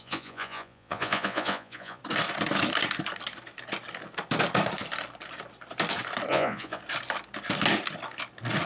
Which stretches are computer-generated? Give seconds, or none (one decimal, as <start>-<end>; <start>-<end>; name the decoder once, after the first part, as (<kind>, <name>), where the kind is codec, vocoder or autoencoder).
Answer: 0.0-2.0 (vocoder, Vocos); 6.3-6.8